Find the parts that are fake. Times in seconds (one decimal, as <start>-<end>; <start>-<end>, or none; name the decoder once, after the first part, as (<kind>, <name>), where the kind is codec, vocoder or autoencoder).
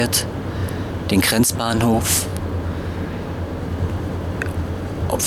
0.0-2.3 (vocoder, BigVGAN v2); 3.7-5.3